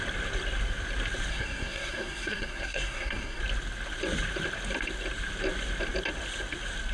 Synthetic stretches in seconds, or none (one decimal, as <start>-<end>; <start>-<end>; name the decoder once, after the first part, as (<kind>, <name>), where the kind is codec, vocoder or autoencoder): 1.3-3.4 (codec, SNAC)